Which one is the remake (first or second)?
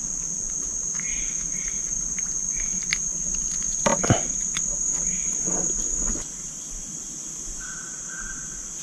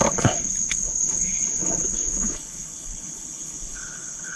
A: second